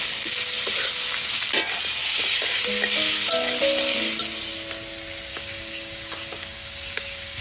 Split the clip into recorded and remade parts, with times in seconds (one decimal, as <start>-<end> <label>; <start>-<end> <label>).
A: 0.0-2.0 recorded; 2.0-2.6 remade; 2.6-5.3 recorded; 5.3-7.4 remade